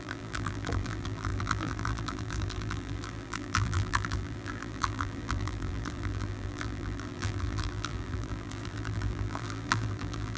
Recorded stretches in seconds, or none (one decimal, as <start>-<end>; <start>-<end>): none